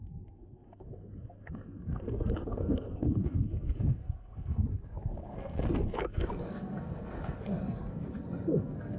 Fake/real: fake